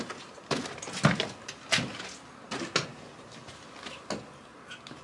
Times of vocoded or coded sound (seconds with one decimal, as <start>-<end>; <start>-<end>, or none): none